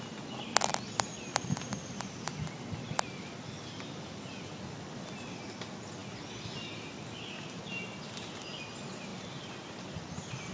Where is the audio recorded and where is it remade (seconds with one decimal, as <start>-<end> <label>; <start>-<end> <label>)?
0.0-10.5 recorded